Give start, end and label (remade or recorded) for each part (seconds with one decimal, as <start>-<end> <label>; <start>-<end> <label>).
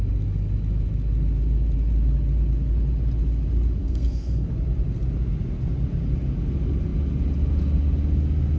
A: 0.0-3.8 recorded; 3.8-4.5 remade; 4.5-8.6 recorded